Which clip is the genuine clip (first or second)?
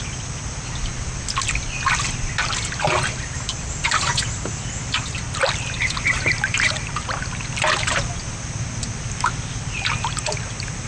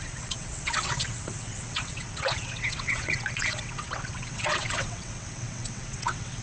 first